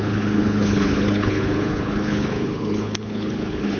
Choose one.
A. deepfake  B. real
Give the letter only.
A